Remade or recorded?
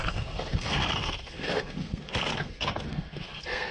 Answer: remade